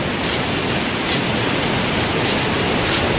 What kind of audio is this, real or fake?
real